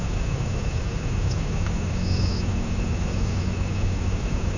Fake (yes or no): yes